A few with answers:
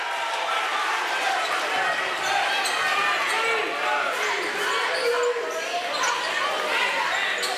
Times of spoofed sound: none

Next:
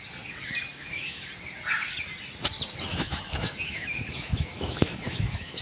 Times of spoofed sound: 0.7-1.3; 2.9-5.6

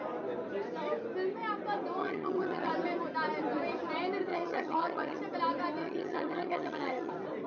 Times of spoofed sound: 2.0-2.7; 4.3-5.2; 5.8-7.1

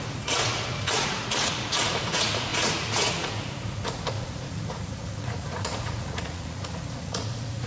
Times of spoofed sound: 0.0-7.7